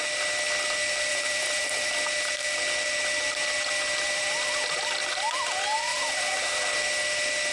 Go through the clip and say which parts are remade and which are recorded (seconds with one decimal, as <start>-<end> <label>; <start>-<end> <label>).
0.0-1.1 recorded; 1.1-1.9 remade; 1.9-5.9 recorded; 5.9-6.6 remade; 6.6-7.5 recorded